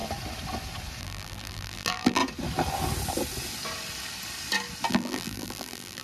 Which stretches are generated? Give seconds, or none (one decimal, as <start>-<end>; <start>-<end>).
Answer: 1.0-2.2; 4.9-6.0